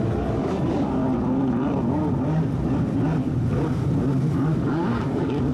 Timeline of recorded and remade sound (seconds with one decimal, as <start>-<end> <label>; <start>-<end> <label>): 0.0-1.0 remade; 1.0-4.3 recorded; 4.3-5.5 remade